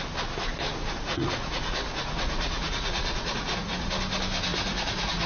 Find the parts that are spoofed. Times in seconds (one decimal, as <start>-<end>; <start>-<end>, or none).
0.7-3.9; 4.5-5.3